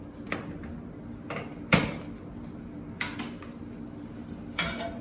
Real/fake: real